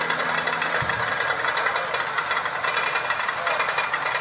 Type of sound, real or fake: real